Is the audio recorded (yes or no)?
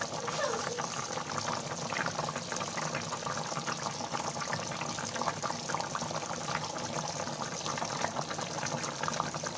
yes